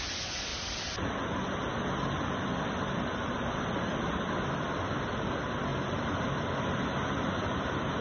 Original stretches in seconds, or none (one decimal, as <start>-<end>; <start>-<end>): 0.0-0.5; 4.9-5.7; 6.3-8.0

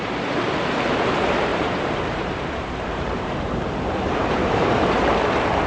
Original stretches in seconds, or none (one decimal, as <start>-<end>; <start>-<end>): 0.0-1.5; 4.9-5.7